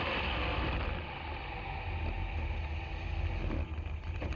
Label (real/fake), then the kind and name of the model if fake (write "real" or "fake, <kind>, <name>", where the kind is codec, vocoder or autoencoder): real